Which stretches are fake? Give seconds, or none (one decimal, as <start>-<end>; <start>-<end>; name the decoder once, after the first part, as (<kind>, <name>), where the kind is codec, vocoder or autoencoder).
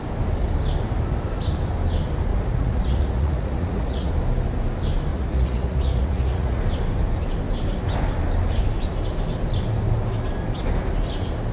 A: 2.3-4.1 (vocoder, Vocos); 5.1-6.6